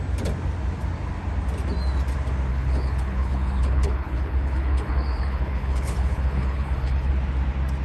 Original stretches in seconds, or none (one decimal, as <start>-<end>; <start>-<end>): 0.0-2.5; 7.1-7.8